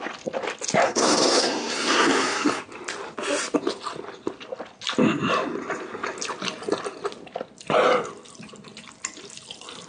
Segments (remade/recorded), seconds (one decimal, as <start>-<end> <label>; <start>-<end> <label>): 0.0-0.8 recorded; 0.8-2.6 remade; 2.6-9.9 recorded